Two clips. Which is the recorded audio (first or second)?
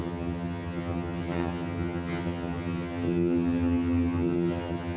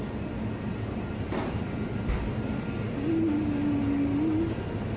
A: second